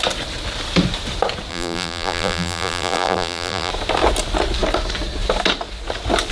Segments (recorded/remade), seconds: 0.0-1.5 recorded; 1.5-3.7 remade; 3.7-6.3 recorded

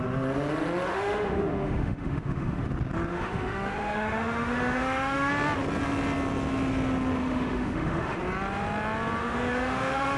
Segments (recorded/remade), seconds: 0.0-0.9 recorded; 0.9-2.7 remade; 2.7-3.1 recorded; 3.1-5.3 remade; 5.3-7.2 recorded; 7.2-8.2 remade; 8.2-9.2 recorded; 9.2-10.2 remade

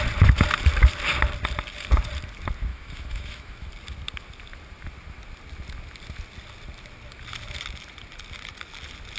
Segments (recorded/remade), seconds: 0.0-2.7 recorded; 2.7-3.7 remade; 3.7-9.2 recorded

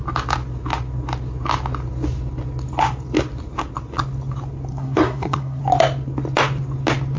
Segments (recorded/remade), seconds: 0.0-4.7 recorded; 4.7-5.6 remade; 5.6-7.2 recorded

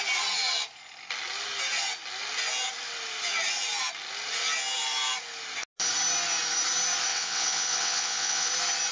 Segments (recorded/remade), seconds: 0.0-7.1 recorded; 7.1-8.5 remade; 8.5-8.9 recorded